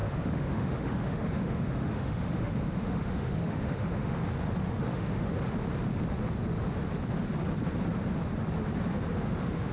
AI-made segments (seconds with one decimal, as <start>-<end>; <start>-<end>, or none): 0.0-4.2; 4.8-5.3; 9.2-9.7